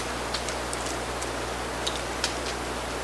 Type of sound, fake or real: real